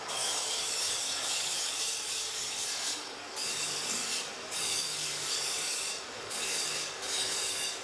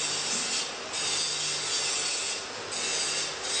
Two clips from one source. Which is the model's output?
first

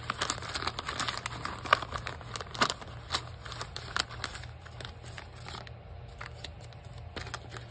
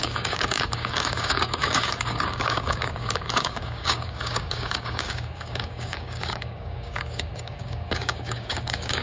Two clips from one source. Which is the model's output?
second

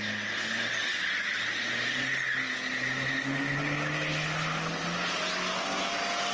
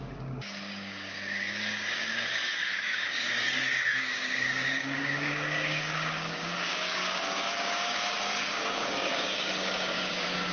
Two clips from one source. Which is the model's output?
second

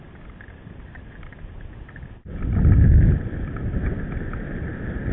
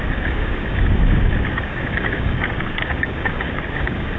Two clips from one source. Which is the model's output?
second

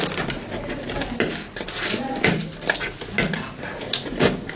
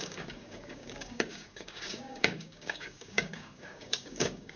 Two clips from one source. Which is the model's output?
second